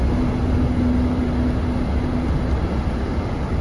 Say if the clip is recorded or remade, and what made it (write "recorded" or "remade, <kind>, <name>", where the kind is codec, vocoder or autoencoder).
recorded